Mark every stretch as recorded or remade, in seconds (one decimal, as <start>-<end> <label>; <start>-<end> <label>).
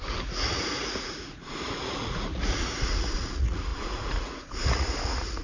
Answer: 0.0-5.4 remade